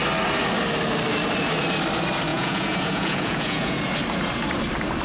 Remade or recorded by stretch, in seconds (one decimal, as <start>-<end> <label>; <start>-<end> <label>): 0.0-2.3 recorded; 2.3-3.8 remade; 3.8-5.0 recorded